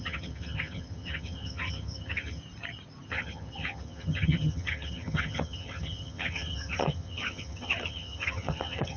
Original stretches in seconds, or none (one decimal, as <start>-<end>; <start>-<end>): 2.4-3.1

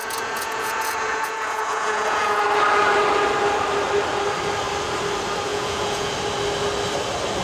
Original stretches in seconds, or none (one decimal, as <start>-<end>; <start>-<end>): 2.4-5.5; 6.1-7.4

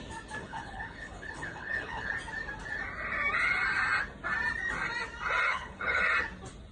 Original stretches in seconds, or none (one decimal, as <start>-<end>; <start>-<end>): 0.0-0.4; 2.1-5.5; 6.0-6.7

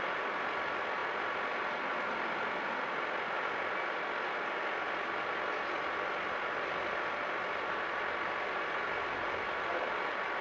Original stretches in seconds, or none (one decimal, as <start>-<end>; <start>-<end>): 0.0-10.4

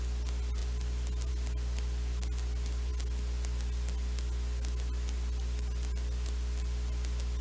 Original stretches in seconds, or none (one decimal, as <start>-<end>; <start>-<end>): 0.0-7.4